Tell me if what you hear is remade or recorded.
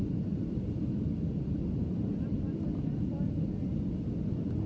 remade